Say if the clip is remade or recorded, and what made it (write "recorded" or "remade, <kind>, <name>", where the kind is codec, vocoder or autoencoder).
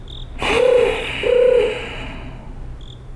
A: recorded